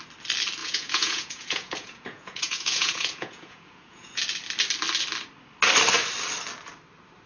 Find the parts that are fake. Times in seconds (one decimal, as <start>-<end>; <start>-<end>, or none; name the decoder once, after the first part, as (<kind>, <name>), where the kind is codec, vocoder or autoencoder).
0.6-4.2 (vocoder, Vocos)